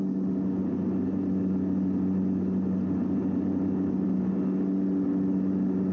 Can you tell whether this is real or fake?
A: real